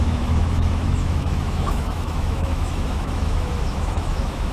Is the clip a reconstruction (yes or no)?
yes